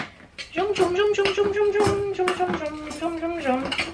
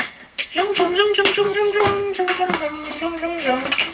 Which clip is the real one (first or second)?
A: first